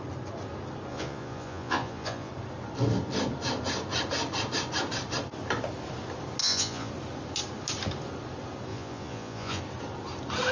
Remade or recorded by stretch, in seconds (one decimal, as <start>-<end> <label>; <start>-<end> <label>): 0.0-0.9 recorded; 0.9-2.3 remade; 2.3-6.4 recorded; 6.4-6.9 remade; 6.9-8.7 recorded; 8.7-9.6 remade; 9.6-10.5 recorded